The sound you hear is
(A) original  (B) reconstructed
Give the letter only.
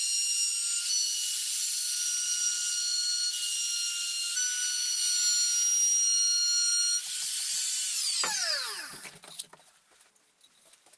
A